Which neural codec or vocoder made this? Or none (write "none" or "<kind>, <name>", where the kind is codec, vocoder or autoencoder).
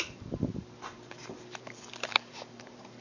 vocoder, BigVGAN v2